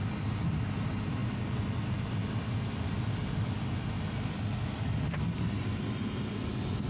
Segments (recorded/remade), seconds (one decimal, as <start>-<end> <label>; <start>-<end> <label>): 0.0-6.9 recorded

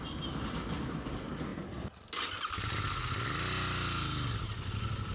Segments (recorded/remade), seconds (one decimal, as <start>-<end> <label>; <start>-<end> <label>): 0.0-5.1 recorded

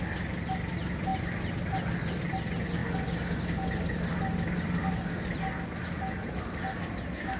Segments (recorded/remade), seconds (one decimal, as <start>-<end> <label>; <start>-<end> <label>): 0.0-7.4 recorded

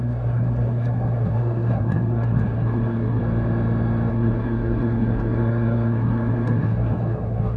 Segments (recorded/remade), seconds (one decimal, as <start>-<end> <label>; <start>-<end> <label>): 0.0-3.2 remade; 3.2-4.1 recorded; 4.1-7.6 remade

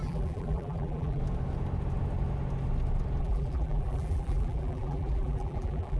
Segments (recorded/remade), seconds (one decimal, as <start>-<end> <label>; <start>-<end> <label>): 0.0-1.2 remade; 1.2-3.2 recorded; 3.2-6.0 remade

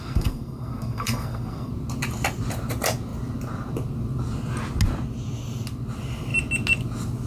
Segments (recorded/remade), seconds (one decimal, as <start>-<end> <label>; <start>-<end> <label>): 0.0-1.7 remade; 1.7-7.3 recorded

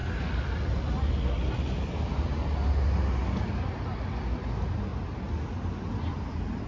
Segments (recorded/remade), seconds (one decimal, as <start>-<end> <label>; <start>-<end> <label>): 0.0-6.7 recorded

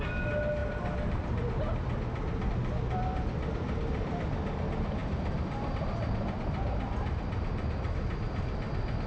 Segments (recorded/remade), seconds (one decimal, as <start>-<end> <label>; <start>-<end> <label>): 0.0-9.1 recorded